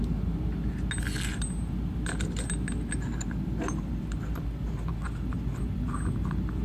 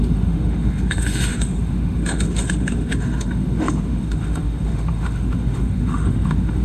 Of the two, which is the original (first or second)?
first